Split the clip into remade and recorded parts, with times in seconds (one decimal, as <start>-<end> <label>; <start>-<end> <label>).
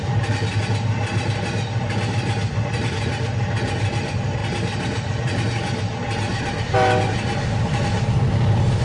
0.0-8.8 recorded